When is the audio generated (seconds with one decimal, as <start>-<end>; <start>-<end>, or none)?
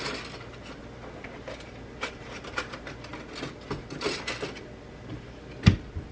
0.0-0.8; 2.1-3.1